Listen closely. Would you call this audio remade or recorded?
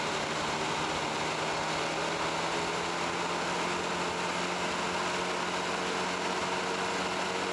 recorded